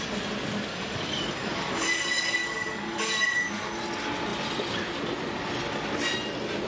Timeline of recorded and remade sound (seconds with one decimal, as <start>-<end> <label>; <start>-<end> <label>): 0.0-0.7 recorded; 0.7-3.5 remade; 3.5-6.7 recorded